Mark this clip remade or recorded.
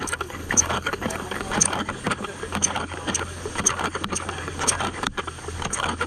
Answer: remade